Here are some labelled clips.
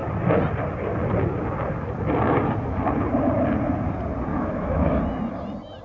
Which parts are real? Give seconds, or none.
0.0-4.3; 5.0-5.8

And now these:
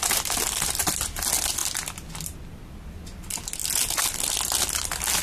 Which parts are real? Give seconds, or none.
0.0-5.2

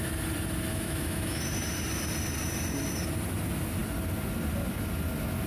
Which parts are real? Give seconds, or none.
0.0-0.7; 1.4-5.5

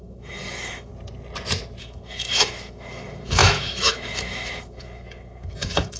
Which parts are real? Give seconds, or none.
0.9-1.8

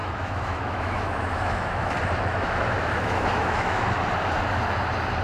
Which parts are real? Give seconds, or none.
1.9-2.3; 4.0-5.2

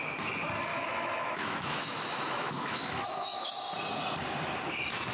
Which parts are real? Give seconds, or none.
0.0-0.7; 3.5-5.1

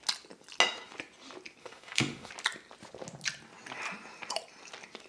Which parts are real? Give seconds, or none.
0.0-1.6; 2.3-5.1

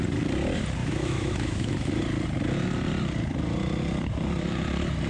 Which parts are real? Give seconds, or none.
0.0-0.8; 2.0-5.1